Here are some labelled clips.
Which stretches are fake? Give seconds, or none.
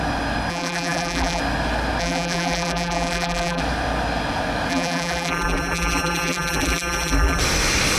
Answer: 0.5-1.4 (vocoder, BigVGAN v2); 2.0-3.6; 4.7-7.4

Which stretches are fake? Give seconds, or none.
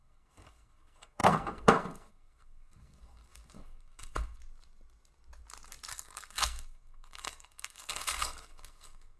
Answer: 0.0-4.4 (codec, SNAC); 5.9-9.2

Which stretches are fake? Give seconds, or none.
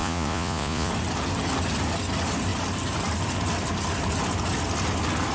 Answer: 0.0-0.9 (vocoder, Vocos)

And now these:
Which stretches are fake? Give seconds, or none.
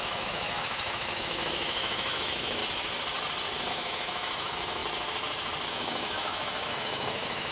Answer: 0.0-2.6 (autoencoder, DAC-VAE); 3.7-4.8; 5.7-7.5